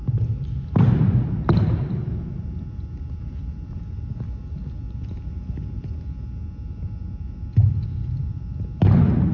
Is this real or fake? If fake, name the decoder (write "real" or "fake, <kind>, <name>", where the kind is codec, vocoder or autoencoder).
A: real